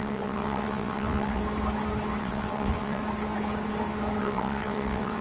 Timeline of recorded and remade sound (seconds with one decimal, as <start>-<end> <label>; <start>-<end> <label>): 0.0-1.4 remade; 1.4-2.2 recorded; 2.2-3.0 remade; 3.0-4.2 recorded; 4.2-5.2 remade